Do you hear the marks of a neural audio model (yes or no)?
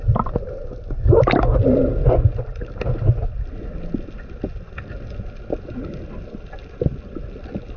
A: no